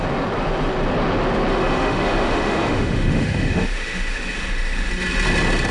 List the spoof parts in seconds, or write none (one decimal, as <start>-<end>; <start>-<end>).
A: 1.5-4.9